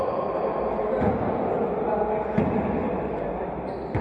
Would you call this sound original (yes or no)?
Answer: yes